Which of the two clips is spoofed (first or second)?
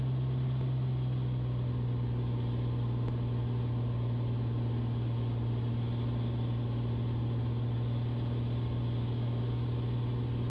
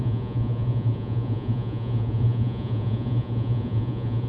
second